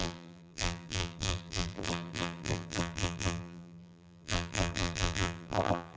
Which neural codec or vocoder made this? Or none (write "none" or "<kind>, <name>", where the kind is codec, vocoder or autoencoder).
vocoder, BigVGAN v2